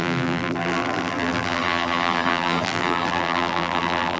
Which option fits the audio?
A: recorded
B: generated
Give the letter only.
B